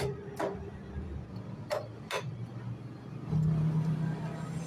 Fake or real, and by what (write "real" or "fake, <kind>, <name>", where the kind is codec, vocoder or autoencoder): real